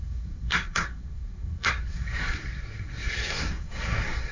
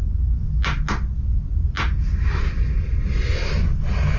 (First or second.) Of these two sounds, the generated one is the first